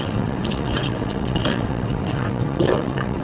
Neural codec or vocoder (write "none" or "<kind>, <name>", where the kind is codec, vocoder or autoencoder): vocoder, WaveNeXt